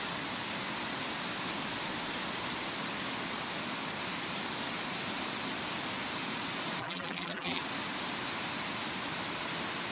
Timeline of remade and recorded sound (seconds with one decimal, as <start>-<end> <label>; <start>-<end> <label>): 0.0-6.8 recorded; 6.8-7.6 remade; 7.6-9.9 recorded